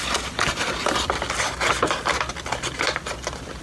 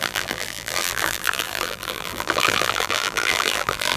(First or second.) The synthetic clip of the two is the second